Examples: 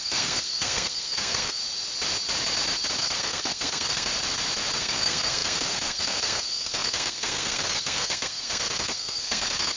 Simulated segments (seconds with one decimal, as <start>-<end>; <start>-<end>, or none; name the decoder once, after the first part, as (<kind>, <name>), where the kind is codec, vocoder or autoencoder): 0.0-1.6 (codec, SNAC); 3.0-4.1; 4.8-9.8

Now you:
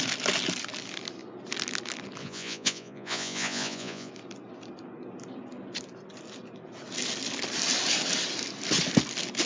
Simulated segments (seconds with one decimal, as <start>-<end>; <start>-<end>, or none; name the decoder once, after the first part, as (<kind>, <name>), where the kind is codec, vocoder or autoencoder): 2.2-4.1 (vocoder, Vocos)

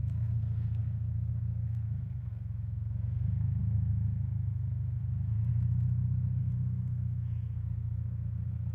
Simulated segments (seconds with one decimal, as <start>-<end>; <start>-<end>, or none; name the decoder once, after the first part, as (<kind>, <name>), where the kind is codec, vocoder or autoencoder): 0.0-5.5 (codec, SNAC); 6.4-8.7

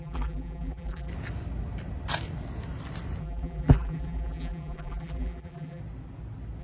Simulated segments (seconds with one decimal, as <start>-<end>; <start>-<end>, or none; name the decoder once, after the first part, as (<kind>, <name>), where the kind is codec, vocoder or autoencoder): 0.0-1.1 (vocoder, BigVGAN v2); 3.2-5.8

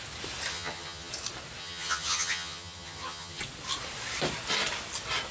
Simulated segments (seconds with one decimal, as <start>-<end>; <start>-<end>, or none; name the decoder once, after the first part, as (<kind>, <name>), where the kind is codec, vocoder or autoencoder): 0.5-1.1 (vocoder, HiFi-GAN); 1.6-3.4

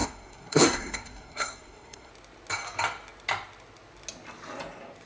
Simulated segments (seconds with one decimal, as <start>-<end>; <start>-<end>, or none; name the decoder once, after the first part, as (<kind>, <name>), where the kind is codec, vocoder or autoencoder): 0.0-2.1 (codec, SNAC)

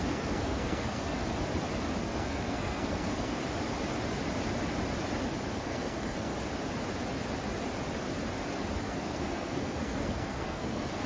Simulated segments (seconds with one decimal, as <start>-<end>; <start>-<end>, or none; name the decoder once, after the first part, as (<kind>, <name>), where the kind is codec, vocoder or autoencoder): 0.0-1.2 (codec, SNAC); 2.0-3.4; 5.5-6.3; 8.8-11.1

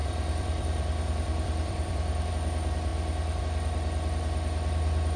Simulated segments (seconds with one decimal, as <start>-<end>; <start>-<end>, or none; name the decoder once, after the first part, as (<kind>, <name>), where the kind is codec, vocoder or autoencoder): 0.0-2.3 (vocoder, BigVGAN v2)